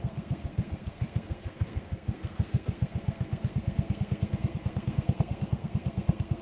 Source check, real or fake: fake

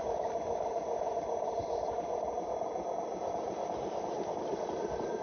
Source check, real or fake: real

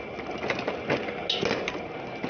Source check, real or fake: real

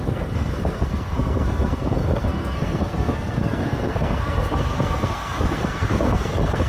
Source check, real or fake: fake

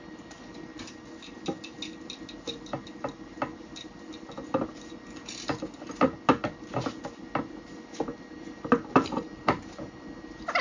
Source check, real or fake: real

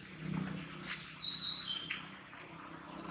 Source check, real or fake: real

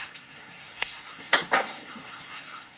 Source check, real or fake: fake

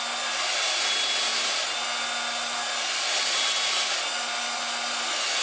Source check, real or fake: real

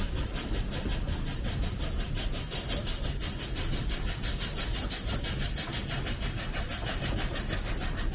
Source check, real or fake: real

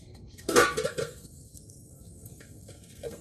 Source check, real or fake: fake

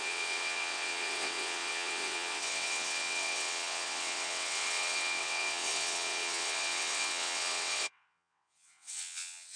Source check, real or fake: fake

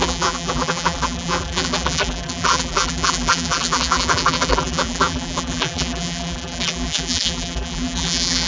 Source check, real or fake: fake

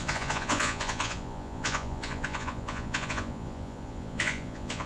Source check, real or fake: fake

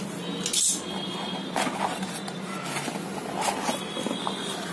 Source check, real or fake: real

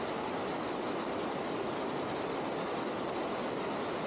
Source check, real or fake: real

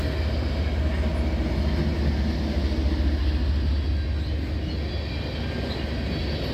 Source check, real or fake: real